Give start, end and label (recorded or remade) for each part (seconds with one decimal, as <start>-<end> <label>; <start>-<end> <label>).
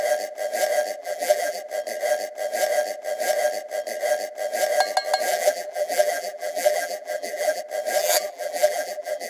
0.0-1.0 recorded; 1.0-1.6 remade; 1.6-5.3 recorded; 5.3-7.6 remade; 7.6-8.0 recorded; 8.0-9.3 remade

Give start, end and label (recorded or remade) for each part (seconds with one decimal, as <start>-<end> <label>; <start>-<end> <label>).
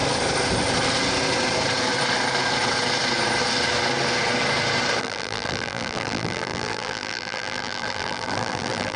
0.0-5.0 recorded; 5.0-9.0 remade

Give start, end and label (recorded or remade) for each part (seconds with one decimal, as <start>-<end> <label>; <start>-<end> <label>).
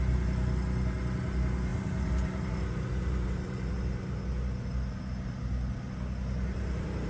0.0-1.7 recorded; 1.7-3.8 remade; 3.8-6.5 recorded; 6.5-7.1 remade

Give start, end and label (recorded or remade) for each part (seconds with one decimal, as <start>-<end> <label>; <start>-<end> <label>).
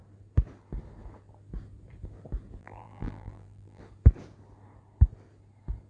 0.0-2.6 recorded; 2.6-3.8 remade; 3.8-5.9 recorded